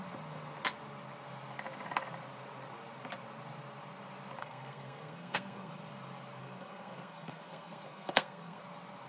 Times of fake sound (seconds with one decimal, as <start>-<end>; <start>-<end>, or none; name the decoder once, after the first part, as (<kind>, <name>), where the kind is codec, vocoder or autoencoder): 4.4-5.7 (codec, SNAC); 6.4-8.6